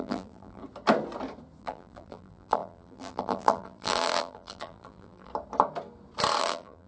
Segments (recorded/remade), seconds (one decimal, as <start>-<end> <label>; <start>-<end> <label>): 0.0-0.6 remade; 0.6-1.6 recorded; 1.6-5.3 remade; 5.3-6.4 recorded; 6.4-6.9 remade